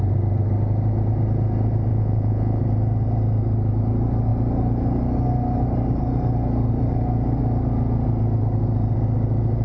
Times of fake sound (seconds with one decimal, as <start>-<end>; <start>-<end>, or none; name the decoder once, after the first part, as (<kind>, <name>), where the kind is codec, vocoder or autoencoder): 1.9-2.6 (vocoder, Vocos)